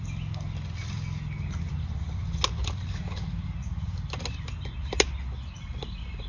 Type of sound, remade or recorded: recorded